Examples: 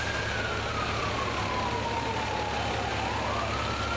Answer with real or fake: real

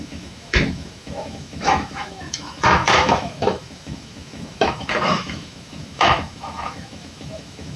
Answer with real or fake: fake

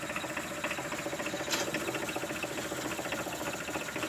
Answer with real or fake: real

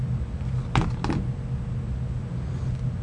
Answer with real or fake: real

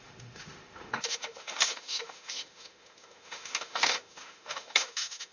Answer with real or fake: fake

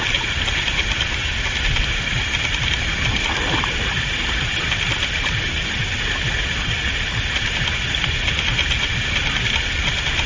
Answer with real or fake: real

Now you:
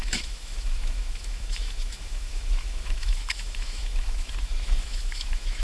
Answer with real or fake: fake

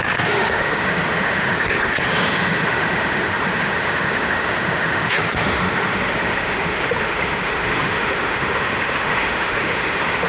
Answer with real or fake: fake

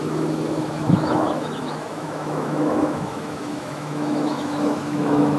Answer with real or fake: fake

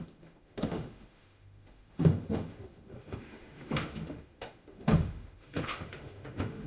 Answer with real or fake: fake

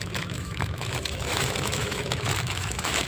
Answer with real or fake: fake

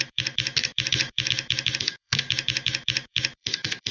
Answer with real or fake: fake